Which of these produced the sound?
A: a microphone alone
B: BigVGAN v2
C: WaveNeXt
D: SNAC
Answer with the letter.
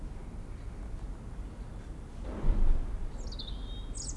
A